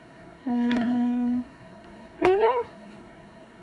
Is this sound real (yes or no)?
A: no